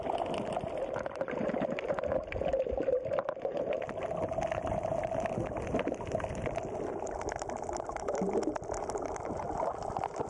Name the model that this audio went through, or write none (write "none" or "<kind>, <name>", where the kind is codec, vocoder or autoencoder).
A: none